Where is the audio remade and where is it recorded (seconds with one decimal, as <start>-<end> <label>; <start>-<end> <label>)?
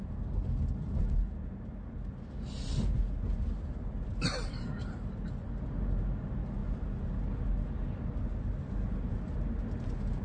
0.0-10.2 recorded